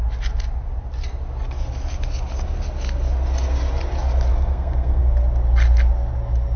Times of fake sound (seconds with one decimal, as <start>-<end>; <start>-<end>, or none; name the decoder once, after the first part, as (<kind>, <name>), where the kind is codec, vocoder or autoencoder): 4.3-5.0 (codec, SNAC)